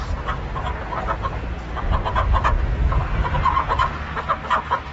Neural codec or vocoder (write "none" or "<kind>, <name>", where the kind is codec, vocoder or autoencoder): none